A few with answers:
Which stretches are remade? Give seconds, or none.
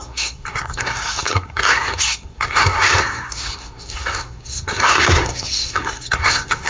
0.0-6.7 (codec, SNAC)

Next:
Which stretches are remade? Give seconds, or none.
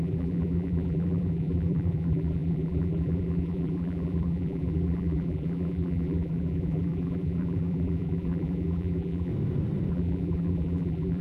0.0-9.3 (vocoder, BigVGAN v2); 9.9-11.2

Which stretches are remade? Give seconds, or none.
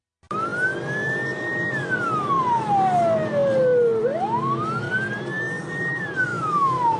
6.3-7.0 (autoencoder, DAC-VAE)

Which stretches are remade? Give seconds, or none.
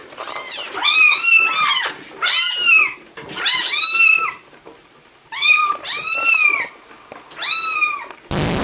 1.7-6.7 (vocoder, BigVGAN v2)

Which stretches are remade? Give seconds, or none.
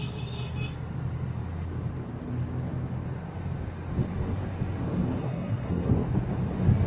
5.2-5.9 (codec, SNAC)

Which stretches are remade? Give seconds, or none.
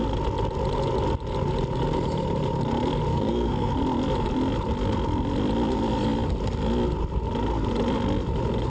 3.1-3.7 (codec, SNAC)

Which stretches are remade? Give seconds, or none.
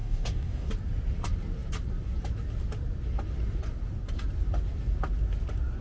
0.0-0.7 (codec, DAC)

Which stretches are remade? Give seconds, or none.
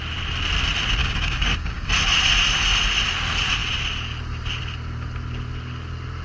1.0-1.9 (codec, DAC)